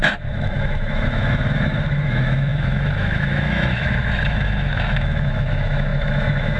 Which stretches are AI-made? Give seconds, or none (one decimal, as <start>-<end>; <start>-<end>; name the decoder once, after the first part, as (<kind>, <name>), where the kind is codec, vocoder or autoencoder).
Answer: 0.0-6.6 (autoencoder, DAC-VAE)